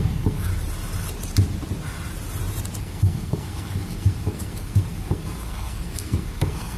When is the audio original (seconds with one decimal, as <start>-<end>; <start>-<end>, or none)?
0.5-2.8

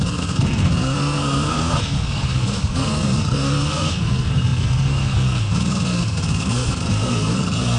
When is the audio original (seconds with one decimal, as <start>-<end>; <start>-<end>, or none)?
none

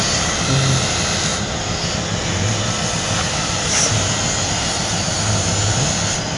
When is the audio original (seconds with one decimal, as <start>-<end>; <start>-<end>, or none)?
0.0-6.4

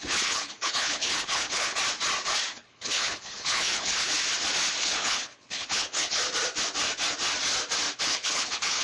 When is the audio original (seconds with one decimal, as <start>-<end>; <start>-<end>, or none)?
1.8-2.5; 4.1-4.8; 6.2-8.0